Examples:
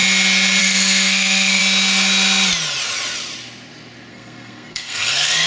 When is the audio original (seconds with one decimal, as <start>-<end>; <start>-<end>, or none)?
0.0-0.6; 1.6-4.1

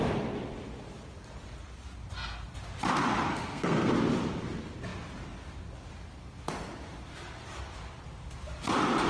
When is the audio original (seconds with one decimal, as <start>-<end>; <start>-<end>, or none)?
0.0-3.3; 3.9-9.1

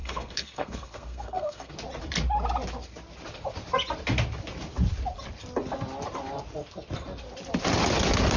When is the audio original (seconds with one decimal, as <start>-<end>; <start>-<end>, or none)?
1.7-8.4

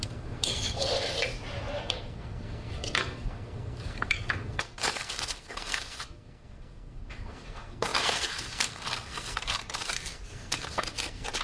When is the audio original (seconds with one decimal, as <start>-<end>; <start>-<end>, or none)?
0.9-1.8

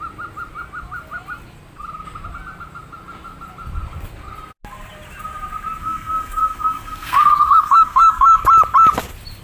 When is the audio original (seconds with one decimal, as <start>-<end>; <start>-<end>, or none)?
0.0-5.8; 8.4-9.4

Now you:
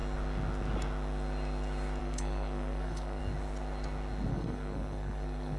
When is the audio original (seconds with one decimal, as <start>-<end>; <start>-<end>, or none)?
0.0-2.0; 3.2-4.3

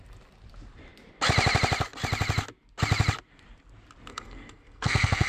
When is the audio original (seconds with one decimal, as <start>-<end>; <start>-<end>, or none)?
0.0-4.1